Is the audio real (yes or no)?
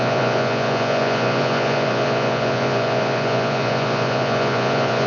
no